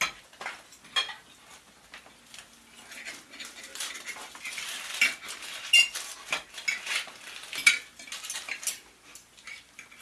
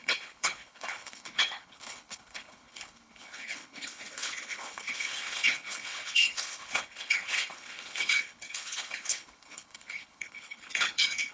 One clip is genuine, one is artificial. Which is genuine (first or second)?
first